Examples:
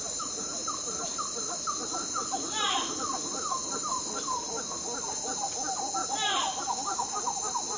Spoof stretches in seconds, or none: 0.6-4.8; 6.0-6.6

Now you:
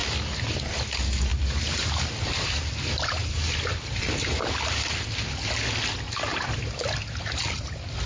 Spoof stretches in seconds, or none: 0.0-0.8; 1.3-2.7; 3.2-4.3; 6.3-6.8

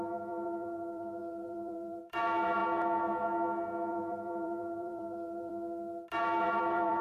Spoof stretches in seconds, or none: 0.0-2.6; 3.9-5.5; 6.2-7.0

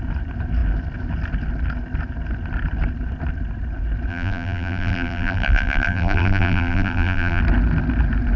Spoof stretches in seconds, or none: 4.1-7.4

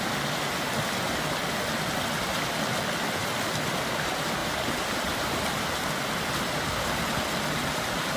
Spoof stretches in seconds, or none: 4.4-6.0